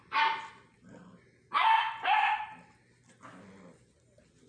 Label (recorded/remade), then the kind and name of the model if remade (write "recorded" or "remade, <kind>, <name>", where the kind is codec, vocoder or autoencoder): recorded